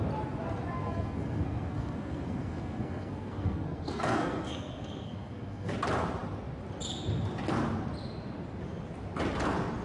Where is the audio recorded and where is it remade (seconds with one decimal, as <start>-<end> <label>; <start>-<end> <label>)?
0.0-0.8 recorded; 0.8-5.7 remade; 5.7-9.8 recorded